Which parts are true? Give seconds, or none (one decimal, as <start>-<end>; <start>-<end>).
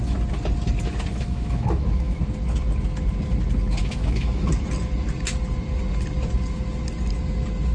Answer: 0.0-1.1; 2.2-3.8; 4.5-7.7